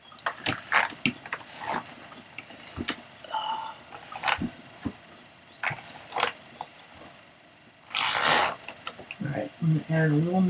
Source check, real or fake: real